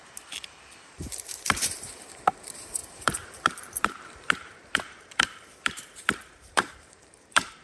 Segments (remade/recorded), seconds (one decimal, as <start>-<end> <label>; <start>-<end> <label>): 0.0-7.6 remade